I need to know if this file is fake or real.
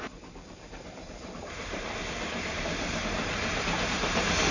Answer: fake